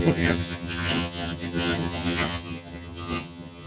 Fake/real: fake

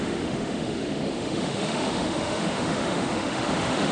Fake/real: fake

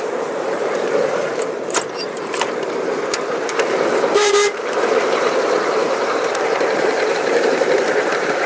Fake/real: fake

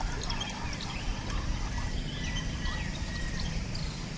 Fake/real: real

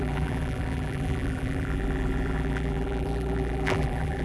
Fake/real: fake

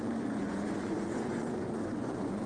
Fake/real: fake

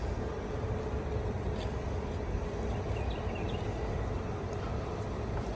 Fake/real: real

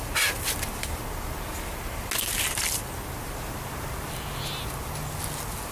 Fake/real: real